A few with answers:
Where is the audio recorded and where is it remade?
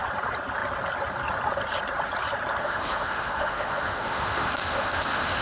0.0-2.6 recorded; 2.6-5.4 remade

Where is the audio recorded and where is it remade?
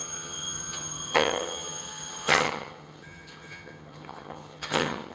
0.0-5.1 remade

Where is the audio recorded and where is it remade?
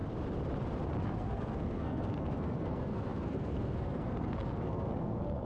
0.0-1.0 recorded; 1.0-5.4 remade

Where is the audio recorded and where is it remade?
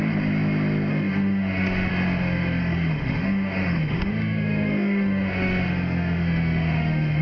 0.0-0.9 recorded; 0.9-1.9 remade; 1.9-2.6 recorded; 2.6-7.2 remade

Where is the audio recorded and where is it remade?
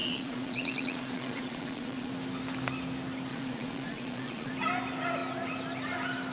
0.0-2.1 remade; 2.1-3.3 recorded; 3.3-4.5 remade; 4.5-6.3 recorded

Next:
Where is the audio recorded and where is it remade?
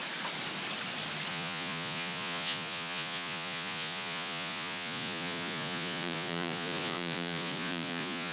0.0-1.3 recorded; 1.3-8.3 remade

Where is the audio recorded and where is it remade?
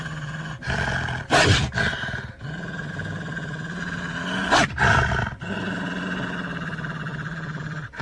0.0-8.0 recorded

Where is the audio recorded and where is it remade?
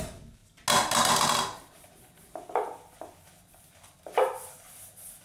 0.0-5.2 recorded